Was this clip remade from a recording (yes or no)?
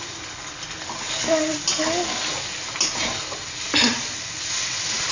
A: no